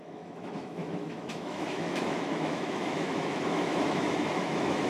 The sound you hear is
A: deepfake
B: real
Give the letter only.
A